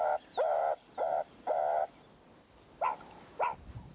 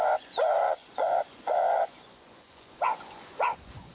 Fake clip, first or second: second